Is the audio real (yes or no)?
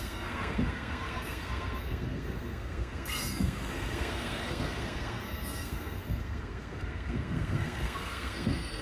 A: no